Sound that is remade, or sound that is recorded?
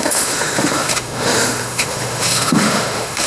remade